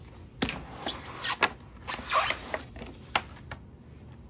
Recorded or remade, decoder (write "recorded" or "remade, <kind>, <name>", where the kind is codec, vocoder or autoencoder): recorded